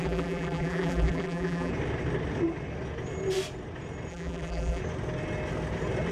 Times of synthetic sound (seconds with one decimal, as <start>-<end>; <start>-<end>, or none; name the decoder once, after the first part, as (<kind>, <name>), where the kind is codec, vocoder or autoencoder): 0.0-1.7 (vocoder, BigVGAN v2); 4.1-4.8